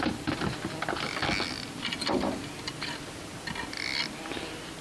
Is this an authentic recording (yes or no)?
yes